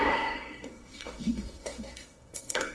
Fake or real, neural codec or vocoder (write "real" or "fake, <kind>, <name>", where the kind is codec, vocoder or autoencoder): fake, codec, SNAC